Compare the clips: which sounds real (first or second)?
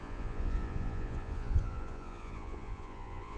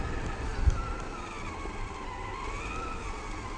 second